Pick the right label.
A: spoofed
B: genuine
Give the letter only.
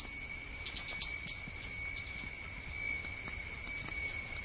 B